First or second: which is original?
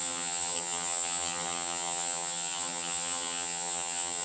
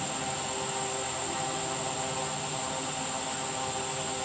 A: second